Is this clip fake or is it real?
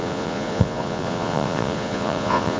fake